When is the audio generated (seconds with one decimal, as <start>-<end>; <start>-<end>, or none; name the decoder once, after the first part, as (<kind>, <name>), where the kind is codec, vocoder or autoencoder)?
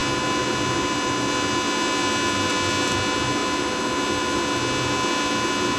none